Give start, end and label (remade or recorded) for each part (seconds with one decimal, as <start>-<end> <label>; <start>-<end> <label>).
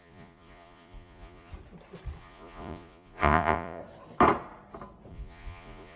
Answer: 0.0-1.5 remade; 1.5-2.2 recorded; 2.2-3.8 remade; 3.8-5.1 recorded; 5.1-6.0 remade